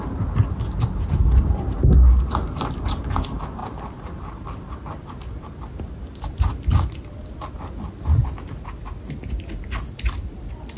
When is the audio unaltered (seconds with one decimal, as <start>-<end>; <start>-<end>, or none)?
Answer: 0.0-10.8